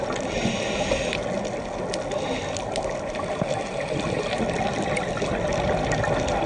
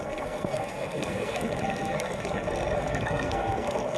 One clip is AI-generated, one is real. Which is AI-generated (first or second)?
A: second